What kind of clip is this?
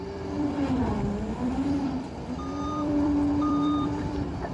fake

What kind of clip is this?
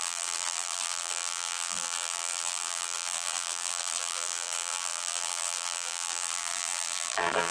fake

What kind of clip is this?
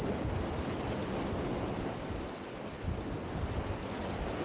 real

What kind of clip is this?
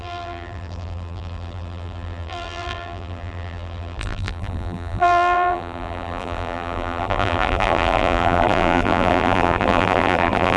fake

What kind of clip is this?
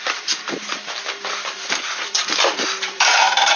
fake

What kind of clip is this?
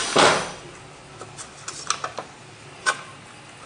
real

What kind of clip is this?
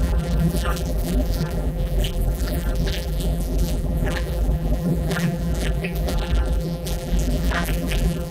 fake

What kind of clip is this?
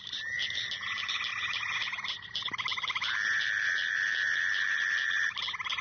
fake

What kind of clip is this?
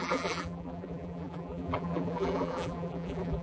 fake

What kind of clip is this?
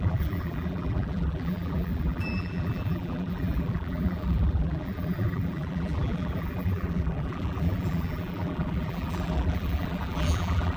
fake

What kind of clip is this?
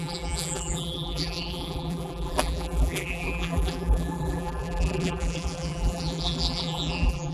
fake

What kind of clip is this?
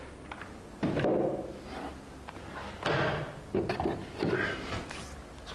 real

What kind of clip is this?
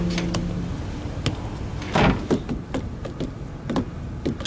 real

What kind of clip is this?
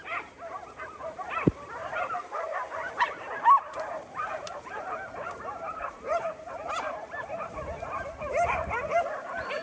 fake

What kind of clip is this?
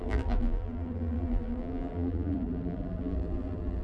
fake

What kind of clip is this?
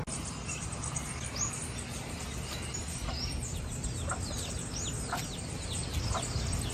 real